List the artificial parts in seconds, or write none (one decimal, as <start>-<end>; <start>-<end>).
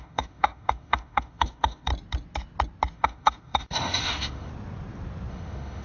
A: 0.0-1.9; 2.9-4.5; 5.3-5.8